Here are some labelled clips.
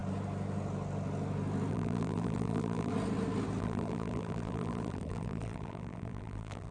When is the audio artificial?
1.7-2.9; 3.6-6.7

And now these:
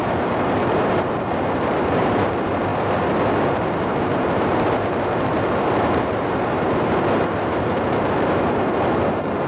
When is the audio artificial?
0.0-9.5

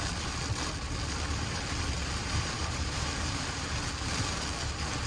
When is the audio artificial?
2.0-3.7